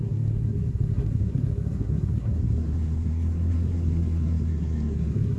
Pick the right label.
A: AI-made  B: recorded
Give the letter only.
A